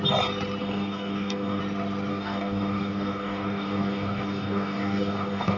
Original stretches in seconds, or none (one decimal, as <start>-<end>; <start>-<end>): 0.0-0.6; 1.6-2.1